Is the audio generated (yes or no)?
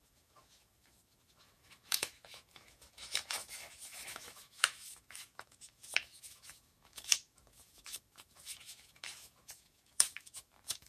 yes